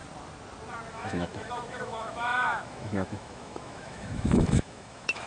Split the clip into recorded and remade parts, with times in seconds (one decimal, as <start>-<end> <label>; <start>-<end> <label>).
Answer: 0.0-0.9 recorded; 0.9-5.3 remade